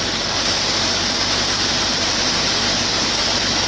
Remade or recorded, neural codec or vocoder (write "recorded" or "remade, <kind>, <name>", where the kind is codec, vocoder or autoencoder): remade, vocoder, BigVGAN v2